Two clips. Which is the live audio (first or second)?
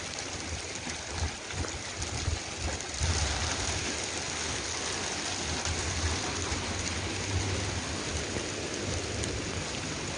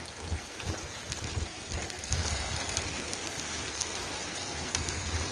first